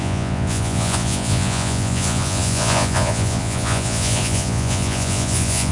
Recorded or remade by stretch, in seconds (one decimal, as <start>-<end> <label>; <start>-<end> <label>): 0.0-5.7 remade